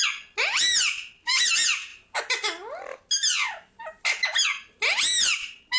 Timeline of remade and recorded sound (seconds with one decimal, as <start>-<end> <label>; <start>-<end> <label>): 0.0-5.8 recorded